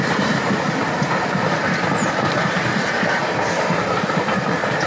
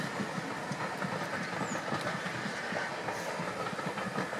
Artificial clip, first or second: first